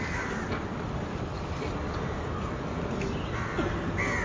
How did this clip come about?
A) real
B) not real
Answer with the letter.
B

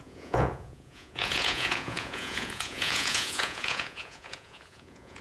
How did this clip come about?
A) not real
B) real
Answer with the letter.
A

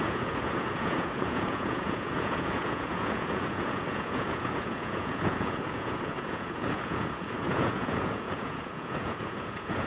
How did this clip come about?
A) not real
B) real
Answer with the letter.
A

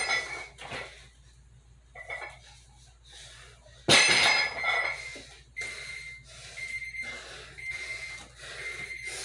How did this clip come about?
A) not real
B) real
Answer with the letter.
B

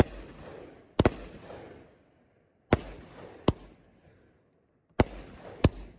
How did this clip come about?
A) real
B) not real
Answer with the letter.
A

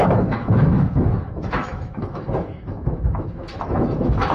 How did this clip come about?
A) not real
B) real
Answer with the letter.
A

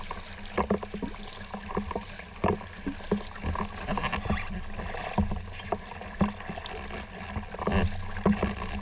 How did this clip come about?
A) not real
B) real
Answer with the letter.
B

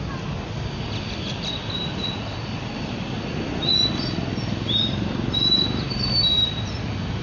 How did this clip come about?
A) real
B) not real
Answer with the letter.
A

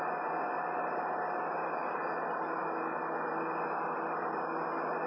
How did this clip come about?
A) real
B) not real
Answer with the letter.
A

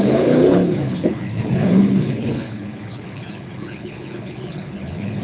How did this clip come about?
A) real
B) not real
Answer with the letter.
B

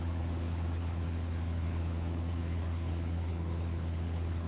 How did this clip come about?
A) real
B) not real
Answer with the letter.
B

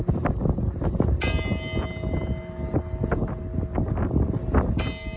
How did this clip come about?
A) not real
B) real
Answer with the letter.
B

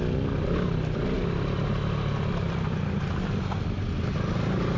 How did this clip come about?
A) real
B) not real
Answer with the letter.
A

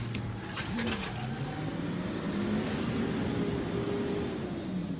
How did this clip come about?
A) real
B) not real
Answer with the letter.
A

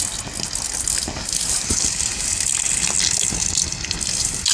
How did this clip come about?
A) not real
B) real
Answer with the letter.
B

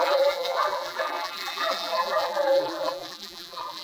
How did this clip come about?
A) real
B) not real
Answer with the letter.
B